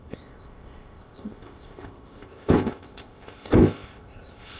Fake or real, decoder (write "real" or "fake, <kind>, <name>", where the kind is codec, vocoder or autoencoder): fake, codec, ZipCodec